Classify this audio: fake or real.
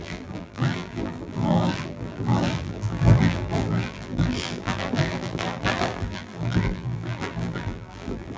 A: fake